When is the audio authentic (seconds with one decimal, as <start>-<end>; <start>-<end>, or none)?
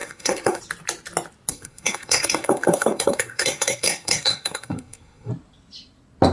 0.6-1.5; 5.3-6.3